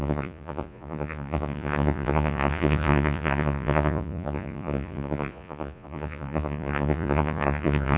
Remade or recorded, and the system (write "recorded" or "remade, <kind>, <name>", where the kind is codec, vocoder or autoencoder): remade, vocoder, Vocos